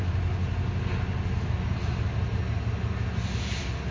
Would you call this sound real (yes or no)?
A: yes